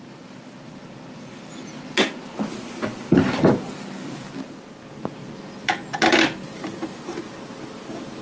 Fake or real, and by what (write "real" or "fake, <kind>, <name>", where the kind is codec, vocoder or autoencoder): real